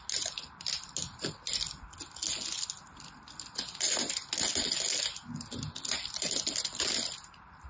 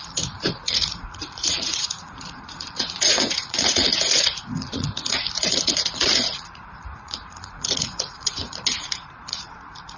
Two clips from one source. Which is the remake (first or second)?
second